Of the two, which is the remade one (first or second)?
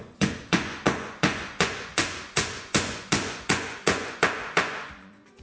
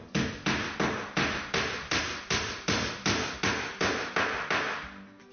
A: first